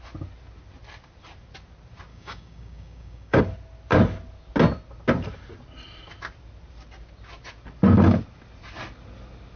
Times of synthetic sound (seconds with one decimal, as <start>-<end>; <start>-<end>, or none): 2.1-3.4